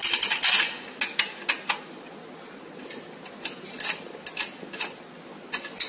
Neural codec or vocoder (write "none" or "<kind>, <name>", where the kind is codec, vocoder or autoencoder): none